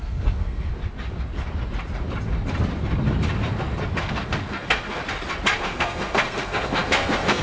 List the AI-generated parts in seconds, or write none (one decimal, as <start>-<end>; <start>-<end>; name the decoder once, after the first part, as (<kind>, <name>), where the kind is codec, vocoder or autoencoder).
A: 0.0-0.7 (codec, SNAC); 4.0-5.0; 5.6-7.4